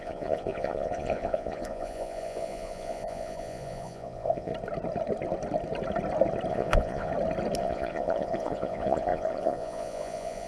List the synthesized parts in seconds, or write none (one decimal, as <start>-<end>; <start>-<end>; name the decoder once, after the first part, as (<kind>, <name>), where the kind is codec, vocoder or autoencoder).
0.0-4.5 (vocoder, Vocos); 6.5-7.1; 7.6-10.5